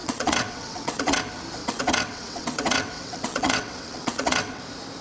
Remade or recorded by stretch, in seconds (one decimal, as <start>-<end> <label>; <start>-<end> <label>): 0.0-1.2 remade; 1.2-1.6 recorded; 1.6-4.6 remade; 4.6-5.0 recorded